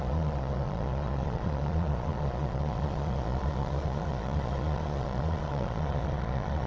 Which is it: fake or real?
fake